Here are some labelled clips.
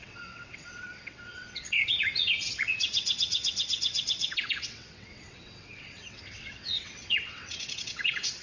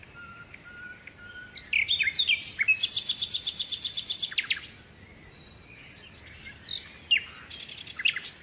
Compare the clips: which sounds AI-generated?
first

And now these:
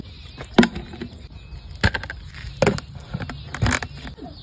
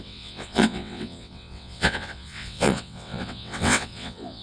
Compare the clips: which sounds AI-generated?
second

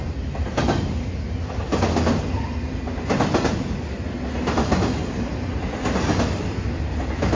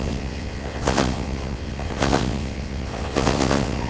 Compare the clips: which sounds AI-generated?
second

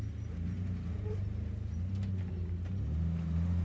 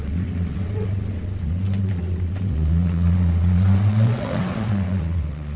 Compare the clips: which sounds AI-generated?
second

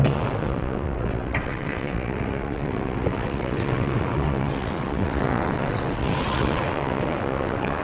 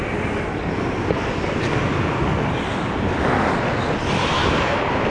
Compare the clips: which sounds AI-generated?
first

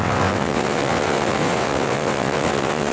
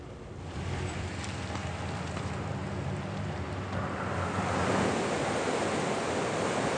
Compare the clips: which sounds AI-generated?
first